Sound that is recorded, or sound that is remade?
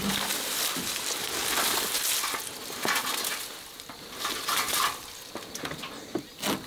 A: recorded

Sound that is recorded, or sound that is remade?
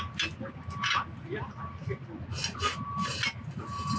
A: recorded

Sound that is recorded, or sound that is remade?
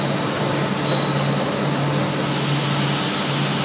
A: recorded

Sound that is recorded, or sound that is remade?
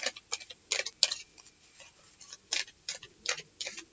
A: recorded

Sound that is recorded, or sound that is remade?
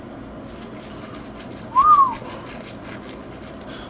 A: recorded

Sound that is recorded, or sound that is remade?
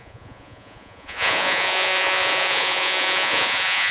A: remade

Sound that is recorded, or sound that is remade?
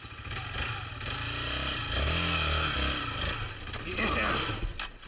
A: recorded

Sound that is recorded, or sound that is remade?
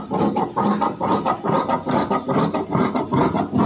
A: recorded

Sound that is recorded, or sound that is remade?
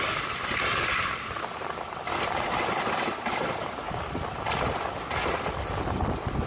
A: recorded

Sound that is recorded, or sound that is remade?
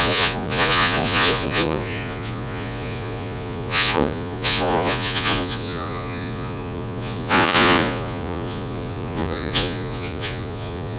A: remade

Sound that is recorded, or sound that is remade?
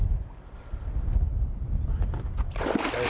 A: recorded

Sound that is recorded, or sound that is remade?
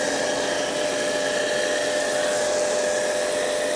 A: recorded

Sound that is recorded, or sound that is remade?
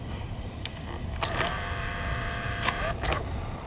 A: recorded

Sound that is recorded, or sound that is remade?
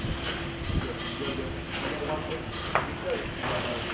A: recorded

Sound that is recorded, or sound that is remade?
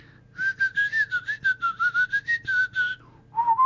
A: recorded